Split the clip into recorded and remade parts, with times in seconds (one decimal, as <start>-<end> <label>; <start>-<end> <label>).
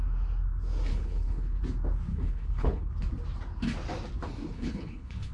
0.0-0.9 recorded; 0.9-1.6 remade; 1.6-2.1 recorded; 2.1-2.9 remade; 2.9-4.5 recorded; 4.5-5.3 remade